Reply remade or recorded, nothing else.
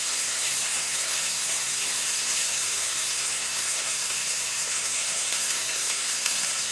remade